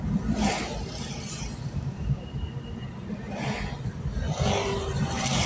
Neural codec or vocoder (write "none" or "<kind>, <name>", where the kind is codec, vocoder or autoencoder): none